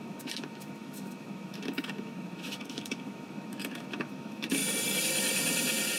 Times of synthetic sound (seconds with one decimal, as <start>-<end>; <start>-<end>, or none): 0.0-4.6